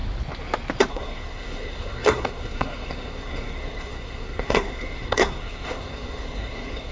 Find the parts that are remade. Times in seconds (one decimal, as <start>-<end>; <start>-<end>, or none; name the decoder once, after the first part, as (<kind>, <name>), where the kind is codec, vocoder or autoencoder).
0.9-6.9 (codec, SNAC)